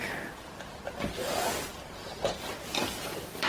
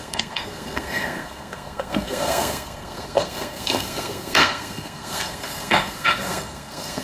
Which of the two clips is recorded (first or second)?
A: first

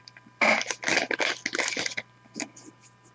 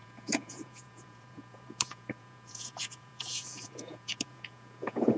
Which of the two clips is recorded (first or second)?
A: first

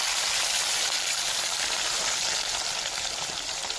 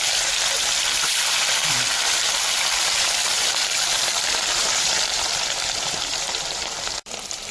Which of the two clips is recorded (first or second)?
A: first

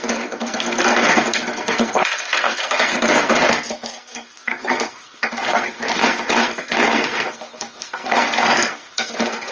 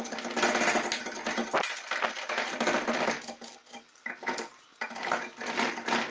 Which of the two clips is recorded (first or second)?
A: second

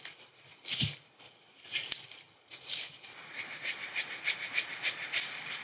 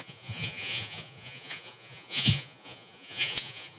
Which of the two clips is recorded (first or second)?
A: first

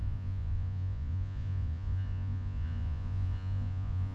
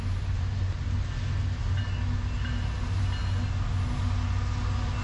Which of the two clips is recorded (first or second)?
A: second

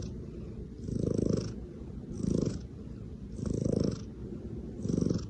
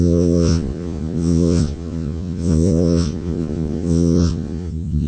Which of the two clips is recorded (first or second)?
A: first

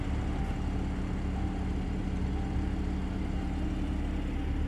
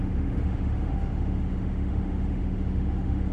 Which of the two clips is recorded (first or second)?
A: first